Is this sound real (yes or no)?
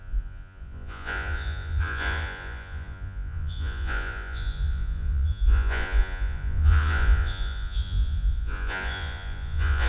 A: no